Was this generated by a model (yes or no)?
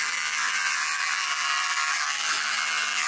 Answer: yes